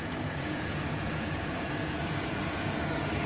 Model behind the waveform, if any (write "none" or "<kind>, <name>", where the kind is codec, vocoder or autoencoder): vocoder, Vocos